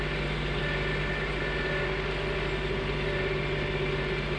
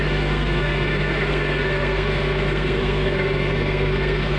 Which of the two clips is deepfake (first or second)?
second